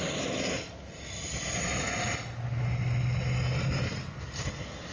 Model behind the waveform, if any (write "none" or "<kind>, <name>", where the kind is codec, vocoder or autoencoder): none